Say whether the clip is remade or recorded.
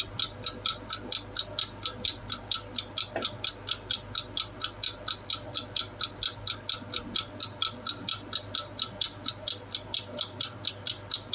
recorded